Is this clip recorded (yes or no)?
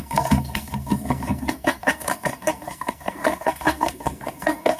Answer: no